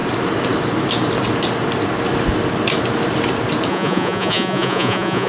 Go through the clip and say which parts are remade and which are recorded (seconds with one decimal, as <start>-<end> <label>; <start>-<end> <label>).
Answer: 0.0-3.7 recorded; 3.7-5.3 remade